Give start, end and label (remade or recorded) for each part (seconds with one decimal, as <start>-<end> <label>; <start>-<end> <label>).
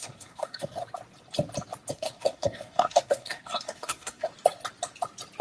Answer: 0.0-0.8 remade; 0.8-1.9 recorded; 1.9-4.3 remade; 4.3-5.4 recorded